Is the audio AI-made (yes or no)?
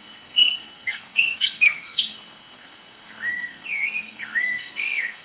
yes